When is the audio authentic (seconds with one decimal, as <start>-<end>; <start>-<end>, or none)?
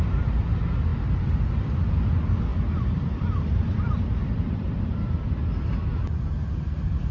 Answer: 0.0-0.9; 2.0-2.5; 5.8-7.1